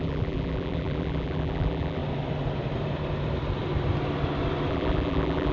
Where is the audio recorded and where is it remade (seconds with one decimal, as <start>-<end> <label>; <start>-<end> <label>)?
0.0-2.0 remade; 2.0-4.7 recorded; 4.7-5.5 remade